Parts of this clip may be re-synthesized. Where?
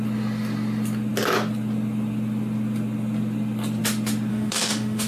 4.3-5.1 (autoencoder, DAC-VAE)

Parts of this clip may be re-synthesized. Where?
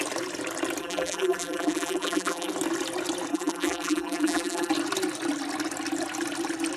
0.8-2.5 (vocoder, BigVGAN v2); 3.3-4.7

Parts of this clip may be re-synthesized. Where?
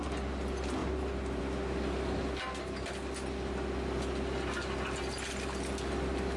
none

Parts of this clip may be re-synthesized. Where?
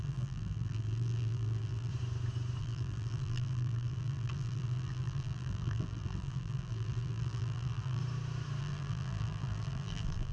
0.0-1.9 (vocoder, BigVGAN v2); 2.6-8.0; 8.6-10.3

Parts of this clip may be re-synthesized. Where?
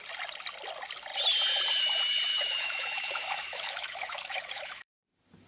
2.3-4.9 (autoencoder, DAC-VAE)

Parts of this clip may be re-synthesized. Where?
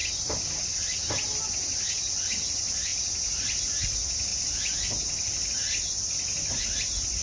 none